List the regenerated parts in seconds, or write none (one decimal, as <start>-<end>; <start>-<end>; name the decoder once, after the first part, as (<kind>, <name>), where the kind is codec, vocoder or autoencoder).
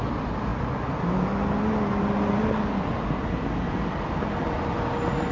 none